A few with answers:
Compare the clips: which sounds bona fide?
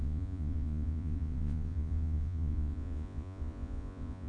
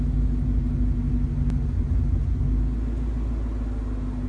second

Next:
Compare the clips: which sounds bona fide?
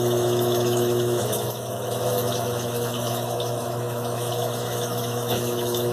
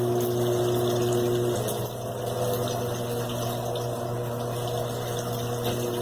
second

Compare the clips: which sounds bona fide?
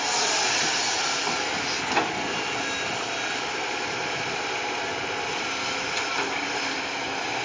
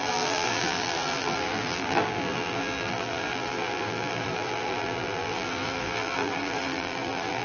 first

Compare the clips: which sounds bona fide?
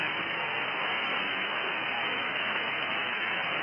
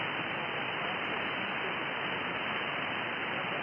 second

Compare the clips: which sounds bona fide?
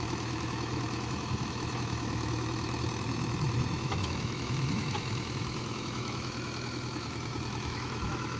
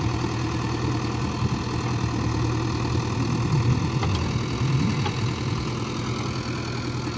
second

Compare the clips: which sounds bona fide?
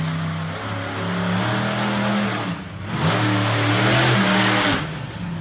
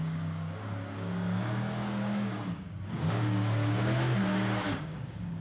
first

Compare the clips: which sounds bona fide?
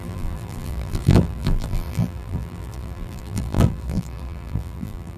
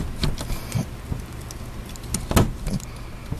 second